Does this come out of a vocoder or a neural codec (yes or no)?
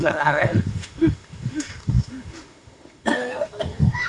yes